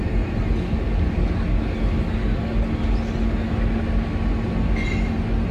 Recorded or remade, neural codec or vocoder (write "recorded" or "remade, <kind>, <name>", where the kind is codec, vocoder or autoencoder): recorded